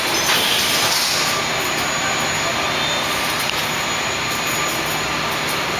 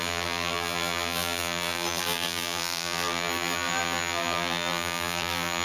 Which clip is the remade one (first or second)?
second